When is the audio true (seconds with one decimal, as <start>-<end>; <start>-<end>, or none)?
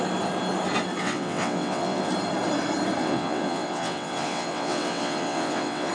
0.0-1.0; 2.1-3.0